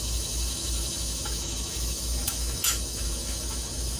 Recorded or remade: remade